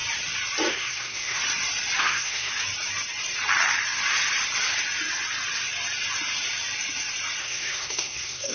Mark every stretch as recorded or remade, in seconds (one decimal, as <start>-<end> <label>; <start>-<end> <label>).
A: 0.0-0.7 recorded; 0.7-1.4 remade; 1.4-2.0 recorded; 2.0-2.5 remade; 2.5-7.4 recorded; 7.4-8.5 remade